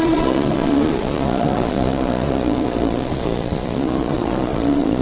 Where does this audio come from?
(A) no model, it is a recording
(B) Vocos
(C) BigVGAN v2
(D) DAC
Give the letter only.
B